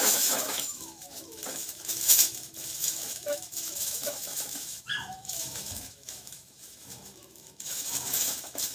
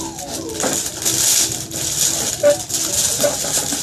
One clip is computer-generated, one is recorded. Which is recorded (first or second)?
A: second